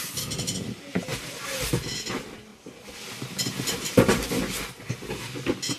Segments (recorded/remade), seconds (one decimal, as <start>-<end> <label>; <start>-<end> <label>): 0.0-2.5 recorded; 2.5-4.3 remade; 4.3-5.8 recorded